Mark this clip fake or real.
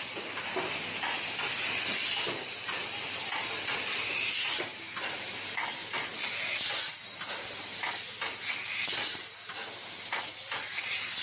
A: real